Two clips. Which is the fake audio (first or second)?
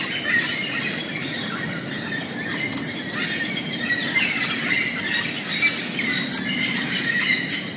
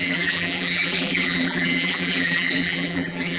second